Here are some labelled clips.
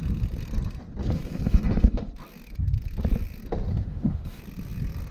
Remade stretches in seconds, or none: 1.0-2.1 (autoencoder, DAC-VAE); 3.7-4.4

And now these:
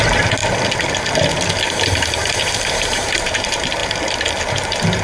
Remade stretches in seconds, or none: 0.0-0.4 (vocoder, BigVGAN v2); 2.3-3.8; 4.4-5.0

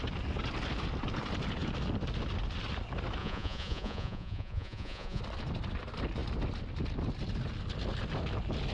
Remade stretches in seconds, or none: 3.2-5.2 (vocoder, Vocos)

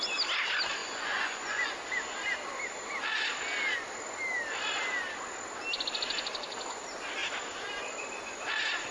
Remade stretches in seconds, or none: 0.8-1.7 (vocoder, Vocos)